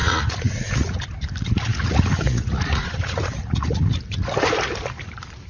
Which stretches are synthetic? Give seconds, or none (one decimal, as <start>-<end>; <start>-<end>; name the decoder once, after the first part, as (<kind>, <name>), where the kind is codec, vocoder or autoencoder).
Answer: 0.0-1.0 (vocoder, Vocos); 1.7-4.0